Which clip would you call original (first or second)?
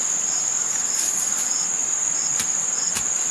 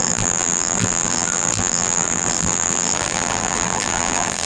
first